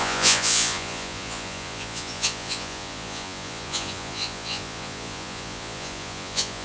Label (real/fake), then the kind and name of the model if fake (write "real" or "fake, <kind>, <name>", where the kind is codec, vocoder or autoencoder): fake, vocoder, Vocos